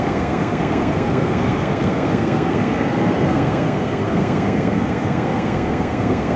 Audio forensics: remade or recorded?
remade